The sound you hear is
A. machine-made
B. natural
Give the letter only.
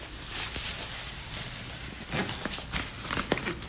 B